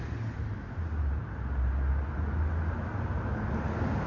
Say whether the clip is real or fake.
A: real